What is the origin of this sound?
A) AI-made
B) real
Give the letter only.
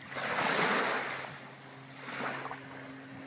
B